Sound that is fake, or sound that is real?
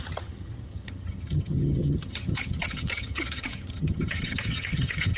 fake